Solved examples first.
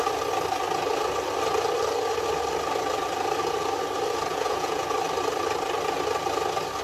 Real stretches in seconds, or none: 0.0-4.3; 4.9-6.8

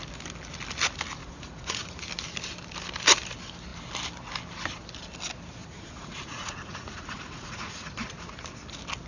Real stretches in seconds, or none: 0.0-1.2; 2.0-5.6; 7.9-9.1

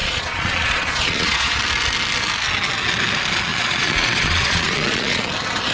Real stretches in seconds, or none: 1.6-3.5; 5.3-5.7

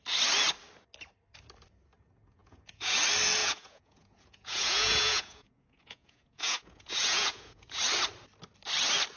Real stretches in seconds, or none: 0.0-2.4; 3.0-3.4; 7.8-9.2

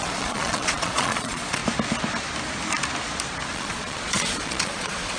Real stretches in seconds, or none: 1.6-3.5

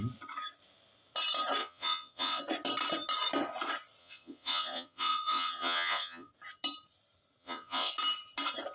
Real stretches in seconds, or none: 0.0-1.6; 2.4-4.0; 6.3-7.4; 7.9-8.7